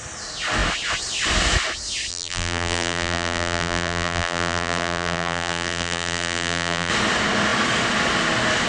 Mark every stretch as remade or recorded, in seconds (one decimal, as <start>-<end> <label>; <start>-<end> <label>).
0.0-2.1 recorded; 2.1-6.9 remade; 6.9-8.7 recorded